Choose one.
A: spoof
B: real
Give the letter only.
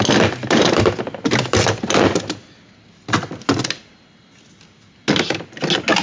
B